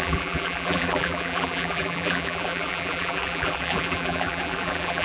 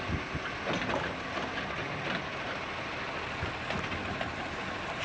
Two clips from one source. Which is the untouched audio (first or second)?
second